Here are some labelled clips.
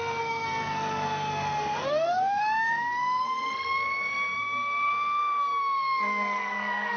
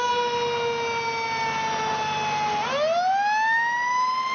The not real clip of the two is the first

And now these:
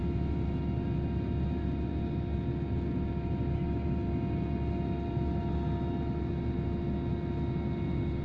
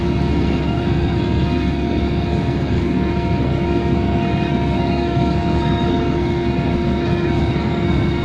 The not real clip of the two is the second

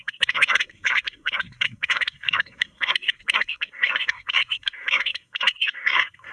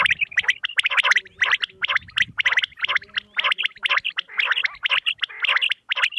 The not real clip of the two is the first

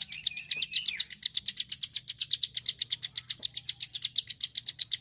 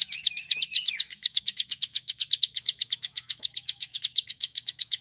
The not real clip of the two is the second